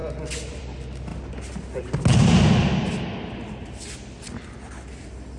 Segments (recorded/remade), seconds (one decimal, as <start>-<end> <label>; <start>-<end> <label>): 0.0-5.4 recorded